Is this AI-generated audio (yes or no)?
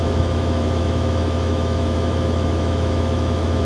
yes